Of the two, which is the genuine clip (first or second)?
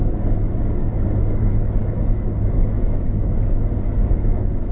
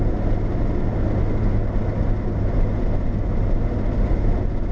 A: second